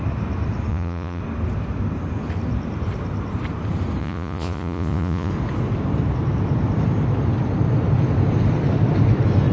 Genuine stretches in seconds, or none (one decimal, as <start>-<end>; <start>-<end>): 0.0-0.7; 1.2-4.0; 5.3-9.5